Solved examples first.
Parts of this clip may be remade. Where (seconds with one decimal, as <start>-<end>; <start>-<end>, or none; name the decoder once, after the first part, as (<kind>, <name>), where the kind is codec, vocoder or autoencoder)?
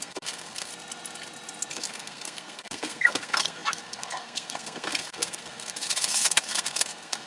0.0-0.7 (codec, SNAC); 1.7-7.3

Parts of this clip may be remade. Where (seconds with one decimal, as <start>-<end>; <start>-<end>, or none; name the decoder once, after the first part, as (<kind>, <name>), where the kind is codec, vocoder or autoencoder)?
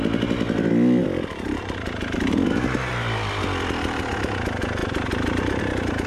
4.8-5.6 (vocoder, BigVGAN v2)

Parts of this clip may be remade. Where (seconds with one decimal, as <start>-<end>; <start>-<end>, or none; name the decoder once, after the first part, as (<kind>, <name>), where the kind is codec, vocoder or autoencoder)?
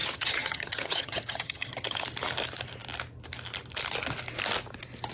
0.0-2.0 (vocoder, HiFi-GAN)